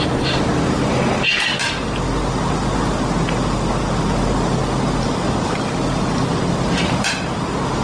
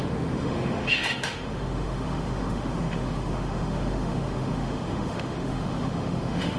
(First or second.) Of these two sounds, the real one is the first